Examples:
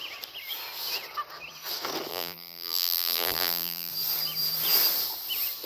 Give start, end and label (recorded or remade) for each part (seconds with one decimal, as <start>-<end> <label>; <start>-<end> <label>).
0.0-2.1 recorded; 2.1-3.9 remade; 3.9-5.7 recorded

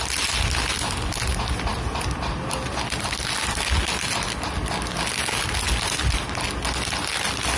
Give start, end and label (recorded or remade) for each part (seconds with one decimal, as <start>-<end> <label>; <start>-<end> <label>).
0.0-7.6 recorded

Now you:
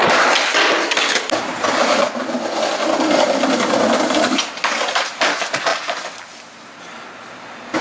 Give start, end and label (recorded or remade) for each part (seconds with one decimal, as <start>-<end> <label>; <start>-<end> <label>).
0.0-7.8 recorded